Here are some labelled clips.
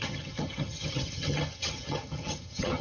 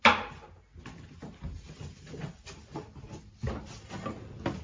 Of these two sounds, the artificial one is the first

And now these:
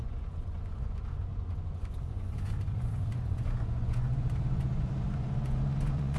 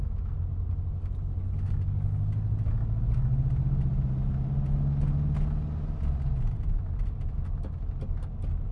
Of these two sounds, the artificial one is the first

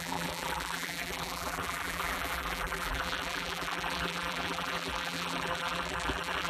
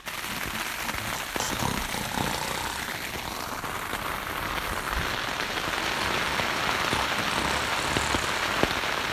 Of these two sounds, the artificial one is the first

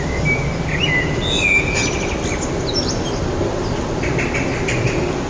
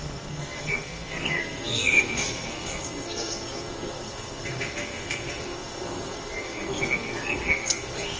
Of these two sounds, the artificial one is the second